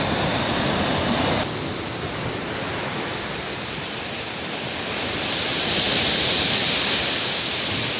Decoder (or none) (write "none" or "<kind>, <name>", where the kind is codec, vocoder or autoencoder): none